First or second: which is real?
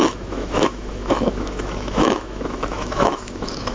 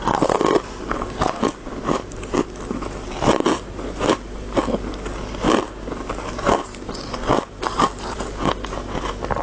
second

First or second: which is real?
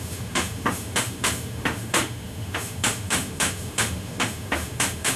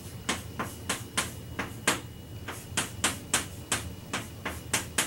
second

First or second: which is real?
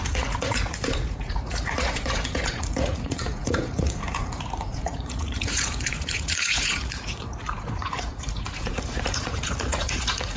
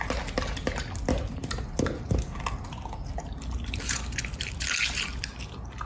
second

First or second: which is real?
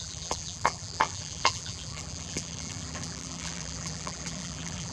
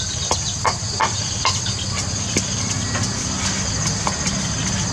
second